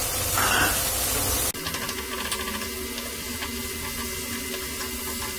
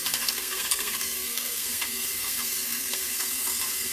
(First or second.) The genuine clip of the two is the first